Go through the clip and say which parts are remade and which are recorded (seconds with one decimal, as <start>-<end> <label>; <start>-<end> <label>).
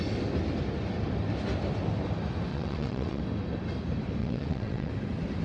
0.0-2.5 recorded; 2.5-3.2 remade; 3.2-4.2 recorded; 4.2-4.9 remade; 4.9-5.4 recorded